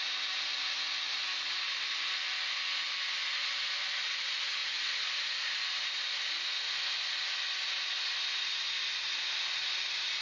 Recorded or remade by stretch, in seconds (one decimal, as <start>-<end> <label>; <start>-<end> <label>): 0.0-10.2 recorded